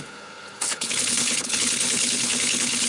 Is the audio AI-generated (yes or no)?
yes